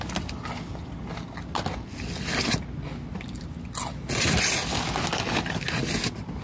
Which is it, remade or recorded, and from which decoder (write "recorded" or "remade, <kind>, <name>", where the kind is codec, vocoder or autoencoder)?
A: recorded